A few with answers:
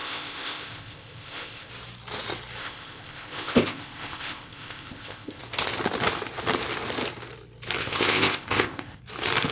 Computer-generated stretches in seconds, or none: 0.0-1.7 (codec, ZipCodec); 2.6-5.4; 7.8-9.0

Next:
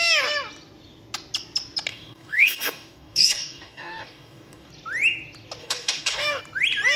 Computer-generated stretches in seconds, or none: 1.9-4.7 (codec, DAC); 5.6-6.4

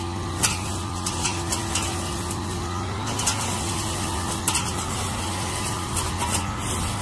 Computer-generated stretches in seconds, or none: 0.7-1.5 (vocoder, BigVGAN v2)